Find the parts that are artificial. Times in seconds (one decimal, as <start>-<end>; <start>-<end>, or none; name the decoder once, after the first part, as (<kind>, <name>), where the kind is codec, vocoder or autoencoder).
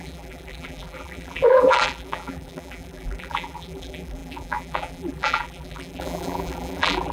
0.0-7.1 (vocoder, BigVGAN v2)